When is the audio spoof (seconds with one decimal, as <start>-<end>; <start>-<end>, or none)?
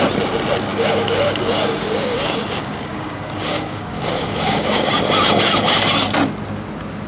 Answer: 0.7-5.0